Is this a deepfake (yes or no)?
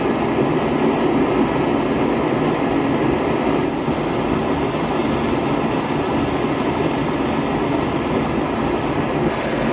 no